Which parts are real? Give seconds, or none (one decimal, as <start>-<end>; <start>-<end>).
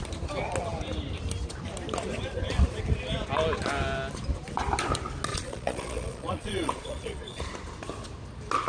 0.0-5.3; 7.4-8.7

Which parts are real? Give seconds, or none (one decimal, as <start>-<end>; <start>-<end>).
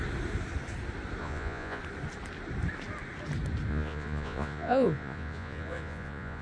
0.0-1.2; 1.8-3.7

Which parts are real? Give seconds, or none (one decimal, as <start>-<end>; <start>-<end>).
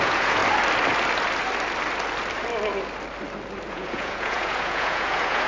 0.4-3.7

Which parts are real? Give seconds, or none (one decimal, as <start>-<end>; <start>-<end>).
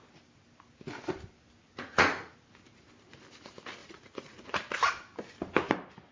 0.0-1.7; 2.3-3.8; 4.5-6.1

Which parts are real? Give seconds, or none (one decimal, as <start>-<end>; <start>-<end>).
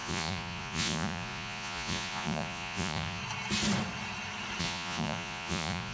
3.2-4.6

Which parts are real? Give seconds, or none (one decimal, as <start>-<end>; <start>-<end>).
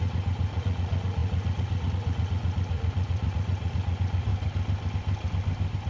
4.3-5.9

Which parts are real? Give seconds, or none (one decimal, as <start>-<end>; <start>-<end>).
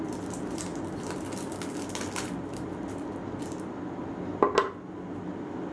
0.0-5.7